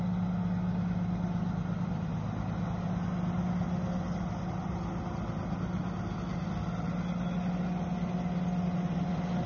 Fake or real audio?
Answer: real